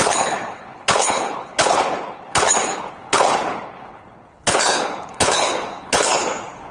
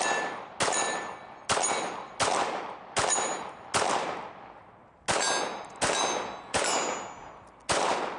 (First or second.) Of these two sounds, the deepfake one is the first